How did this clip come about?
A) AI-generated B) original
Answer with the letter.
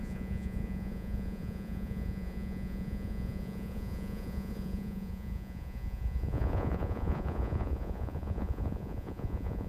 A